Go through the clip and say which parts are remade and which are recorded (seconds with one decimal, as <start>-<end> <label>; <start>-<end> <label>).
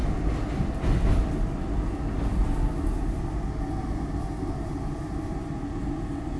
0.0-6.4 recorded